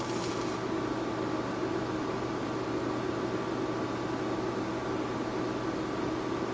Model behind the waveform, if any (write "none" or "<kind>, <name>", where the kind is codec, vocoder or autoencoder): none